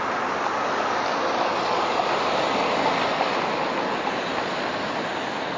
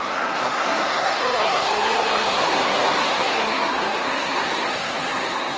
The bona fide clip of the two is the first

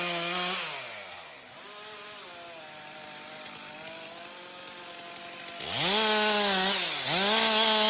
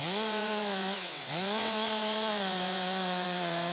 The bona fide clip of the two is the first